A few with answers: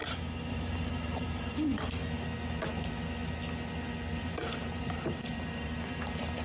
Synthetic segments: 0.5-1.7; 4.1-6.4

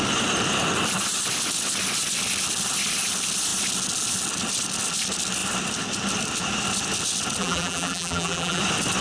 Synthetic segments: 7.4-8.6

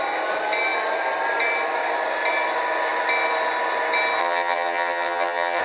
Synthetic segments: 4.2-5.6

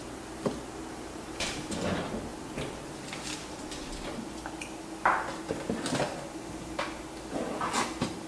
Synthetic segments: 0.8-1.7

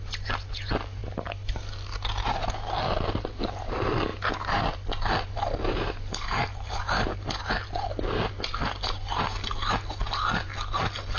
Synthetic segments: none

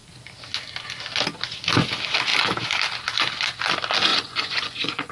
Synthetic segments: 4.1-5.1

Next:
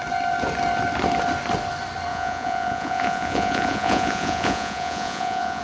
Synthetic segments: 2.1-5.6

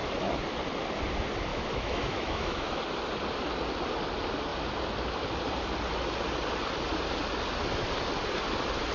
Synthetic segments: 1.5-2.8